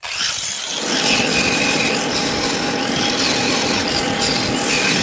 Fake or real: real